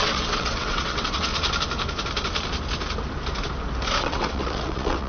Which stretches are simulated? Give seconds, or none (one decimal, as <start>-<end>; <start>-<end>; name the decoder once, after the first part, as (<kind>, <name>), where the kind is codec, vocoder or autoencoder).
0.0-1.3 (vocoder, WaveNeXt); 4.0-5.1